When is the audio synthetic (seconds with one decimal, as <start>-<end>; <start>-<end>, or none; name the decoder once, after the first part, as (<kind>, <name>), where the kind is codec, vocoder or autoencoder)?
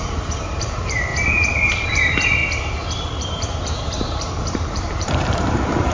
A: 0.0-1.1 (vocoder, BigVGAN v2); 1.7-2.4; 3.3-5.9